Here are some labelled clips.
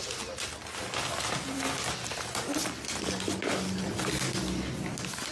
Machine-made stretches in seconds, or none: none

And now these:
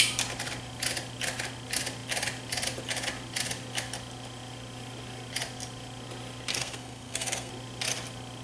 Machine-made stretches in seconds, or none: 6.5-7.5 (codec, SNAC)

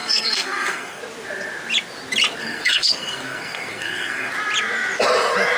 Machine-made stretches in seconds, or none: 0.0-1.0 (codec, SNAC); 2.4-4.3

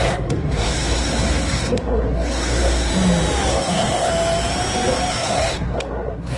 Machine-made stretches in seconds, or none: 0.0-2.9 (codec, SNAC); 3.5-4.1; 5.1-6.4

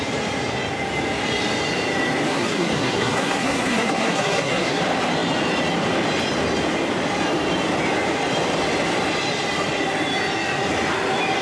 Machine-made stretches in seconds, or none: 2.3-4.8 (codec, SNAC)